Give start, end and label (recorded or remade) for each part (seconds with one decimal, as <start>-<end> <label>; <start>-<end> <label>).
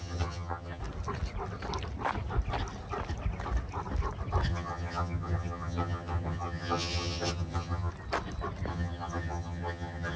0.0-0.8 remade; 0.8-4.5 recorded; 4.5-7.9 remade; 7.9-8.7 recorded; 8.7-10.2 remade